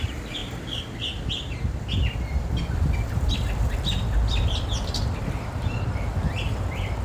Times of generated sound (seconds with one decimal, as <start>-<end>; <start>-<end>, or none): none